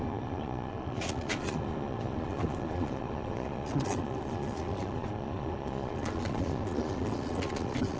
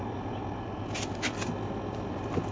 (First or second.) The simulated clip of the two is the first